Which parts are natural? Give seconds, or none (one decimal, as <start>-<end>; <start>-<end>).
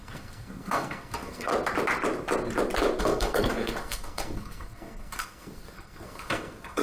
1.5-3.0